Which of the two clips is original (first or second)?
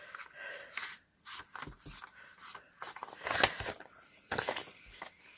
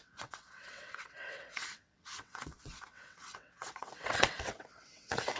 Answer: first